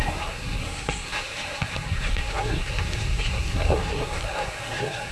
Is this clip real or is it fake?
fake